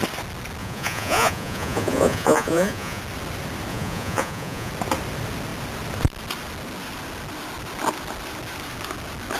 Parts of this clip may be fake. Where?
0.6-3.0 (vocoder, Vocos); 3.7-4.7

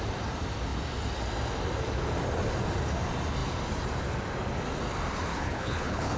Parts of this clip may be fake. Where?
5.3-6.2 (codec, HILCodec)

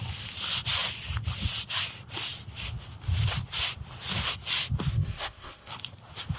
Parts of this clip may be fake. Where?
4.9-5.7 (codec, ZipCodec)

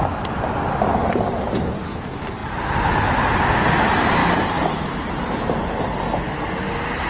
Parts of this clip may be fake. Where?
1.0-1.6 (vocoder, BigVGAN v2); 4.2-5.8

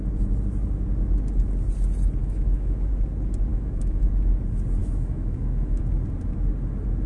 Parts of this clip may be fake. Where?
2.2-2.9 (autoencoder, DAC-VAE); 3.5-4.1; 4.8-5.8